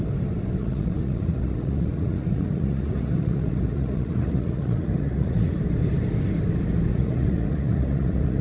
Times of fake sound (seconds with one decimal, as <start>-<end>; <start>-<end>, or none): 0.6-5.6; 6.9-8.4